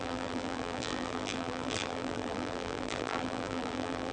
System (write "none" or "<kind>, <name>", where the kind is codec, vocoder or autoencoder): vocoder, BigVGAN v2